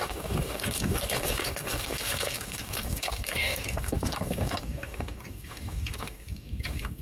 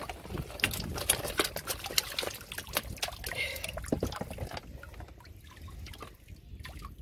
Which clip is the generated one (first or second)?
first